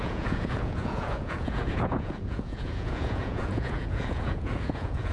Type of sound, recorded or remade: remade